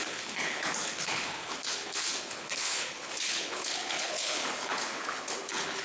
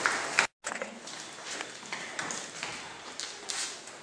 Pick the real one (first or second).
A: second